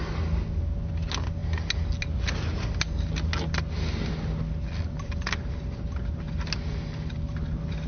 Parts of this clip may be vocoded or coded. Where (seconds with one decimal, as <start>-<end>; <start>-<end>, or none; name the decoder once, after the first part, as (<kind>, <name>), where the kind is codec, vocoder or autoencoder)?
none